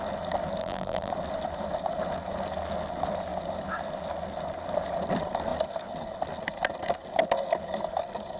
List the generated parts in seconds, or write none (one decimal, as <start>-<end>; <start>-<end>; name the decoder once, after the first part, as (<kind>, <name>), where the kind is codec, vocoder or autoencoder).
0.6-1.1 (vocoder, BigVGAN v2)